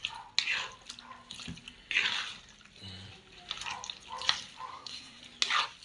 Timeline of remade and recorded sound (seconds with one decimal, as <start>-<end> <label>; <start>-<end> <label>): 0.0-4.7 recorded; 4.7-5.2 remade; 5.2-5.8 recorded